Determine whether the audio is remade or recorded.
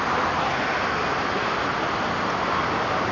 recorded